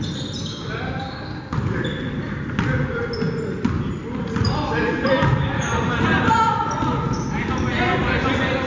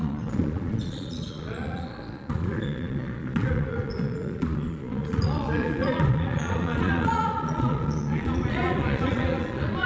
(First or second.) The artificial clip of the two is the second